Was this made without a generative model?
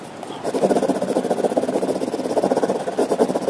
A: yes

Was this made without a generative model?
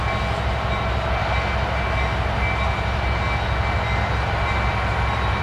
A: yes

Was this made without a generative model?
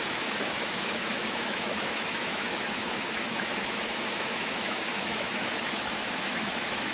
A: no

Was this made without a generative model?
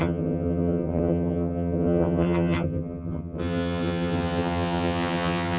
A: no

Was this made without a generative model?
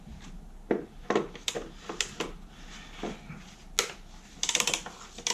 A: yes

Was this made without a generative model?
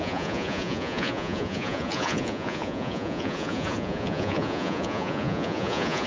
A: no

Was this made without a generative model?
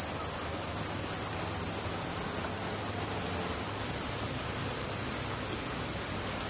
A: yes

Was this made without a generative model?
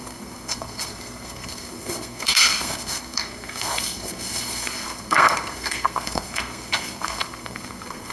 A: no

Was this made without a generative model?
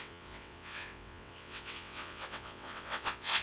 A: no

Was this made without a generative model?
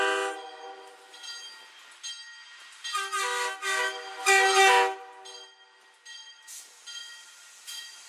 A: yes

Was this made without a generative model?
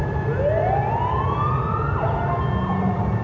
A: yes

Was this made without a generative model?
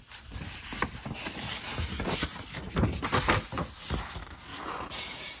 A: yes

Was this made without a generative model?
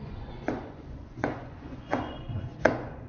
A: no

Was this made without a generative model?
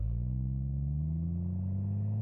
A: yes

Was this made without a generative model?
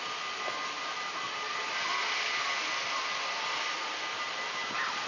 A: yes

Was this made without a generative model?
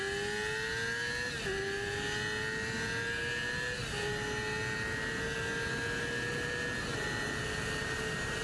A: yes